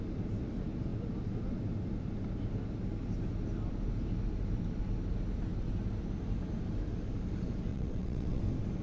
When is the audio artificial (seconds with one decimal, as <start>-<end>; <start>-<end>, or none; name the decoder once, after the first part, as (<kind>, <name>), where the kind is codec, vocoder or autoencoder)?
7.7-8.4 (vocoder, WaveNeXt)